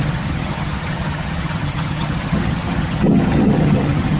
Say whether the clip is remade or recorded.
remade